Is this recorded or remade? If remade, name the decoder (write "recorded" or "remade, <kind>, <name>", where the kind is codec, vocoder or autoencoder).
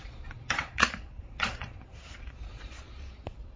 remade, vocoder, Vocos